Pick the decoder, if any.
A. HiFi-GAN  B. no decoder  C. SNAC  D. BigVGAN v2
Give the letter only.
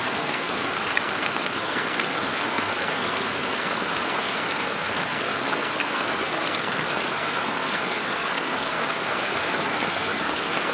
C